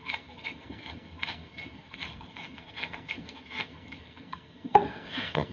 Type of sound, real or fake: fake